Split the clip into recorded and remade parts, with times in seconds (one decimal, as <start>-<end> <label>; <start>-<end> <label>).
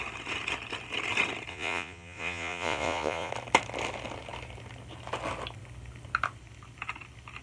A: 0.0-1.5 recorded; 1.5-3.3 remade; 3.3-7.4 recorded